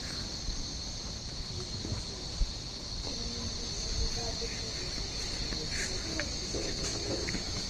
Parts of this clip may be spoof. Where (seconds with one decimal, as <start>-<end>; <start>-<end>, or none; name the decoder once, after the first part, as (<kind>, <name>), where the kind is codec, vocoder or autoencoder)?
4.5-5.0 (autoencoder, DAC-VAE); 6.1-7.7